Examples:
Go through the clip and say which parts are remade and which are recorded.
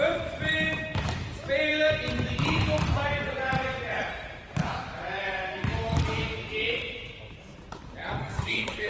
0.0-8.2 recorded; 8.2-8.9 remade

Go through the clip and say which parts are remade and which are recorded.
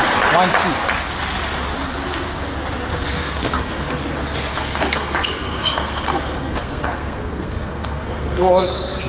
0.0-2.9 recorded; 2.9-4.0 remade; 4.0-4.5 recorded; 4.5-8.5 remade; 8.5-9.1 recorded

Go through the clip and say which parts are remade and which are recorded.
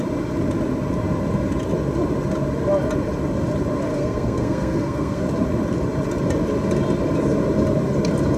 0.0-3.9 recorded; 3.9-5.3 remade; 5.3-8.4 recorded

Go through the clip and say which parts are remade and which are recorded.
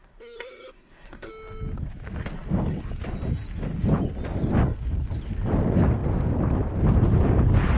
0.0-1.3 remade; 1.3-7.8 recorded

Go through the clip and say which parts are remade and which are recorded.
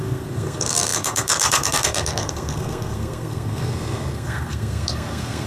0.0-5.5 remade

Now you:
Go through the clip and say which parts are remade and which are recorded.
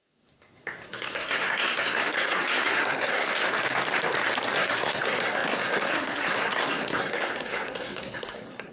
0.0-3.3 remade; 3.3-4.5 recorded; 4.5-8.7 remade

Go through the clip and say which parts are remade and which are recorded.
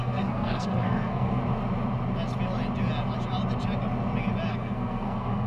0.0-1.4 remade; 1.4-4.5 recorded; 4.5-5.5 remade